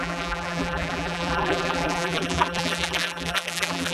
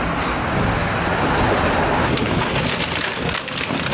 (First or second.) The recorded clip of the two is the second